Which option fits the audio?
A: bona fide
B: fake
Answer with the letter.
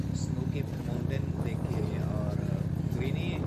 A